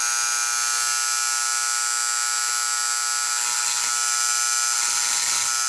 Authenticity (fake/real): real